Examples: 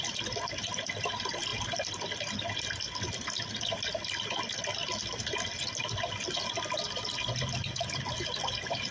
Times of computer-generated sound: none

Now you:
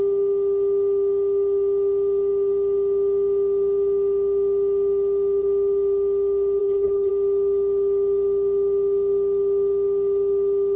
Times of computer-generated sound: 6.6-7.1 (codec, HILCodec)

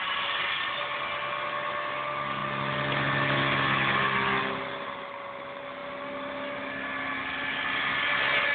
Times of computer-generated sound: none

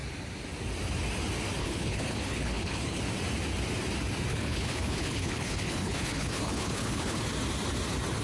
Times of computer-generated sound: 1.6-3.0 (codec, HILCodec); 4.3-7.2